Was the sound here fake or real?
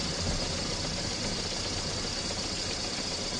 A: real